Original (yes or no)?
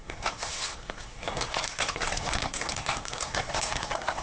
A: no